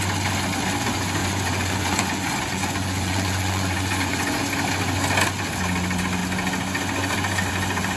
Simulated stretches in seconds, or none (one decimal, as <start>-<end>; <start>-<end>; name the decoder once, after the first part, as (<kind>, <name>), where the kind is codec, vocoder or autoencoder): 1.2-4.4 (vocoder, Vocos)